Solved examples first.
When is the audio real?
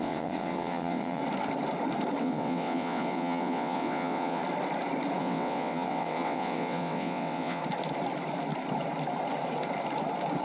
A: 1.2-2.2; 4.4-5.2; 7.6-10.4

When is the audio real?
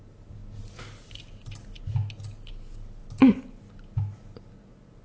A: 0.0-3.0; 3.6-5.0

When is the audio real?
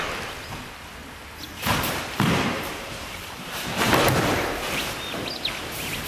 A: 0.0-1.5; 4.7-6.1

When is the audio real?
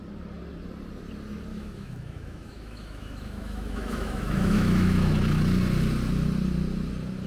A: 0.0-1.5; 5.2-7.3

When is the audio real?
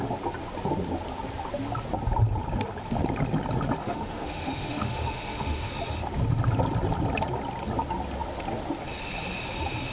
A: 0.0-3.8; 5.7-9.9